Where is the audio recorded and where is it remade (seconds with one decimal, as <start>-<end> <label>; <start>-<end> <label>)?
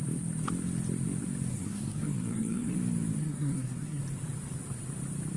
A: 0.0-1.5 recorded; 1.5-2.7 remade; 2.7-3.2 recorded; 3.2-4.0 remade; 4.0-5.4 recorded